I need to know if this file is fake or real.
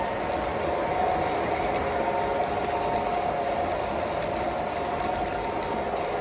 real